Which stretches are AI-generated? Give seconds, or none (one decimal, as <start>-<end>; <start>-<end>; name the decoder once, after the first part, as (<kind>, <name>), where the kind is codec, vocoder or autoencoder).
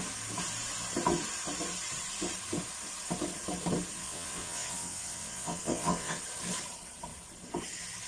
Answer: 4.0-6.2 (vocoder, WaveNeXt)